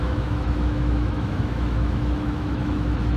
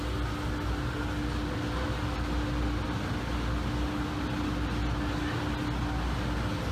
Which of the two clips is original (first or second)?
second